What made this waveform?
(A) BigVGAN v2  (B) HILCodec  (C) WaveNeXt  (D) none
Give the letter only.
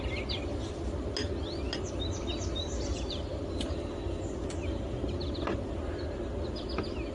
D